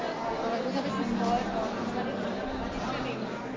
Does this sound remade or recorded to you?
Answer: recorded